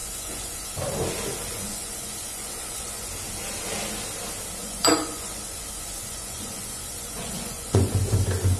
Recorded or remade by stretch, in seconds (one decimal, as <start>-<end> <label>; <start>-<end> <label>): 0.0-0.7 remade; 0.7-1.5 recorded; 1.5-3.1 remade; 3.1-4.6 recorded; 4.6-7.9 remade; 7.9-8.6 recorded